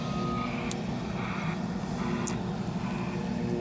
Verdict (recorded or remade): recorded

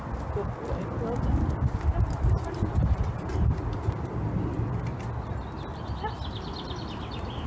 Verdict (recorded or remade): recorded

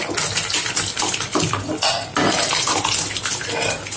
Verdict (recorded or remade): recorded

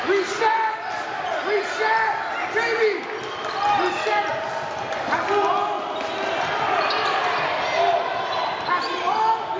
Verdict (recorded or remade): recorded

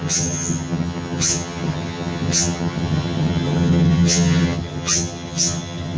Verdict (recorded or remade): remade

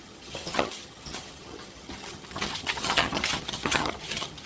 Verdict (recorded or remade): remade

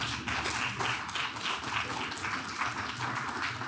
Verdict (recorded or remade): recorded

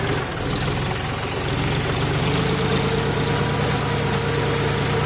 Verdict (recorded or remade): recorded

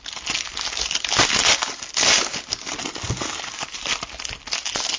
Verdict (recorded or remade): recorded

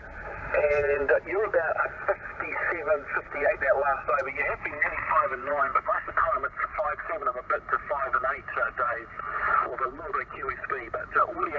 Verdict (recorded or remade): recorded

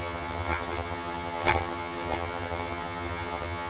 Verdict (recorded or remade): remade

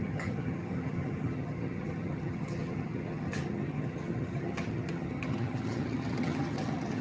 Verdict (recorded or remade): remade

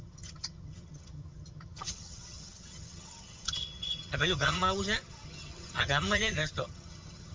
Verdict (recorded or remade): remade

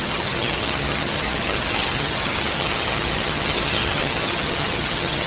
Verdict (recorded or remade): remade